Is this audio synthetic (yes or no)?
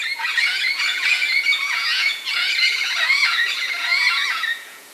yes